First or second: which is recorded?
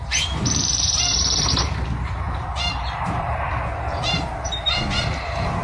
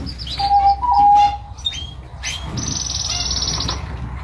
second